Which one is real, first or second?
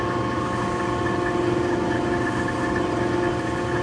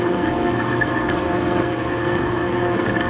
first